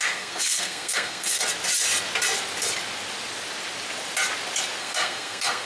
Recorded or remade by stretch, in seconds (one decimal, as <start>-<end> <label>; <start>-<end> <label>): 0.0-1.4 remade; 1.4-4.8 recorded; 4.8-5.7 remade